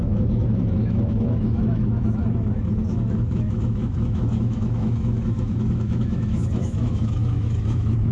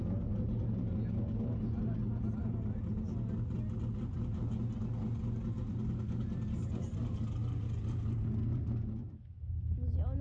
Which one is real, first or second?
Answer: second